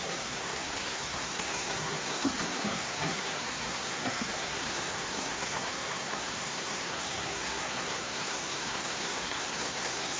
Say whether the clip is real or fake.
fake